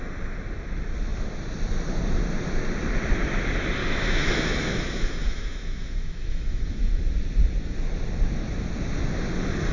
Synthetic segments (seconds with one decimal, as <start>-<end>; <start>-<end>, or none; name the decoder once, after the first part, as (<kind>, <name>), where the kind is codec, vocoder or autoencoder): 3.8-6.9 (autoencoder, DAC-VAE)